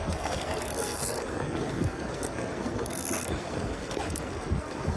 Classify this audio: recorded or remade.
remade